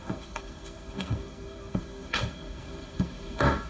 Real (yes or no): no